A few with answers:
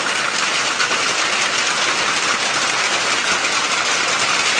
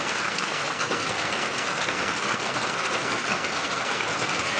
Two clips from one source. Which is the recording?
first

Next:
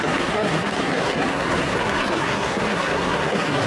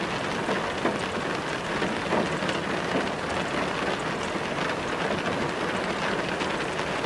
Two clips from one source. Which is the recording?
second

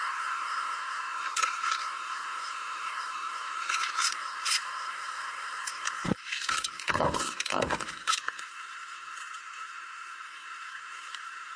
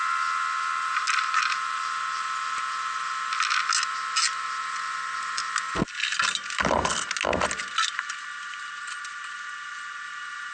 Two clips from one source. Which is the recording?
second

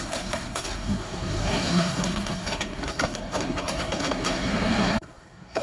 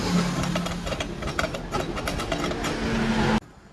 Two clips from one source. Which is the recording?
second